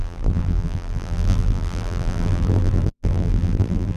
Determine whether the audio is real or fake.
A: fake